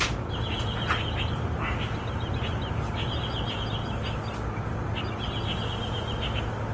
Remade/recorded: recorded